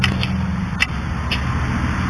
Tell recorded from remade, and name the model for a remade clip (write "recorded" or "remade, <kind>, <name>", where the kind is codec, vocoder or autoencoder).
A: recorded